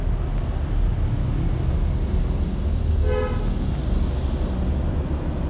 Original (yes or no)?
yes